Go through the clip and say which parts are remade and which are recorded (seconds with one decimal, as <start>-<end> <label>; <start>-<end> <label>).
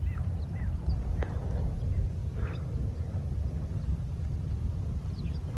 0.0-5.6 recorded